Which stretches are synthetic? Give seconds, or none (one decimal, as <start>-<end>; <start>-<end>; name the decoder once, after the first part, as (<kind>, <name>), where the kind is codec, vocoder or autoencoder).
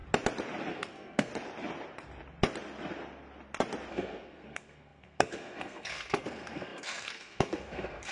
0.7-1.3 (codec, SNAC); 3.9-8.1